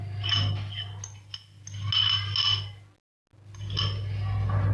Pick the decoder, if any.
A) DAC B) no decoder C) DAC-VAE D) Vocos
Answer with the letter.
B